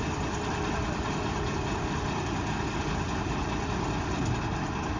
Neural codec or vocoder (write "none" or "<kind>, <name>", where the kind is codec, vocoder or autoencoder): none